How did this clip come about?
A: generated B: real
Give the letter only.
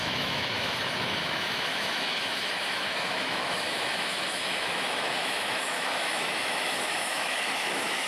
A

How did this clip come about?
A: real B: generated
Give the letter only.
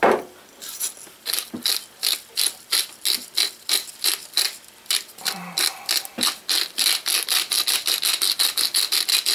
A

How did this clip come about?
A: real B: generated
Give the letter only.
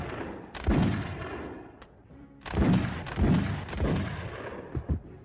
A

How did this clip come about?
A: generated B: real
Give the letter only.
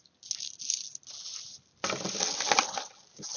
B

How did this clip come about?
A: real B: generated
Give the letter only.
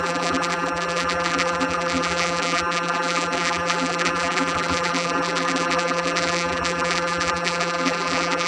B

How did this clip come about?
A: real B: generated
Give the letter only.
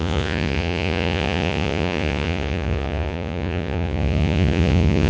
B